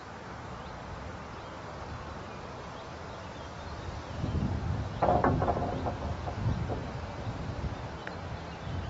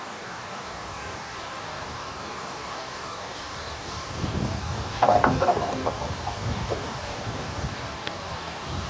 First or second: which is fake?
second